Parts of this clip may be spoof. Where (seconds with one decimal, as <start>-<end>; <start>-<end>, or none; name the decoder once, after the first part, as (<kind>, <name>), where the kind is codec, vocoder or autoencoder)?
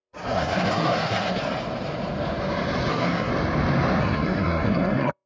0.0-1.4 (codec, SNAC); 2.9-3.3; 4.0-5.3